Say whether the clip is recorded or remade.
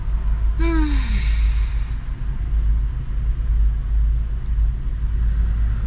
recorded